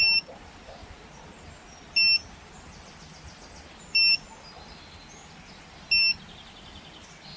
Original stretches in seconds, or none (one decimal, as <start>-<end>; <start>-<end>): 0.0-7.4